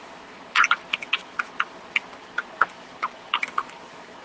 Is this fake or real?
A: real